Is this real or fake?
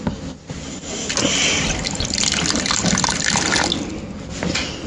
fake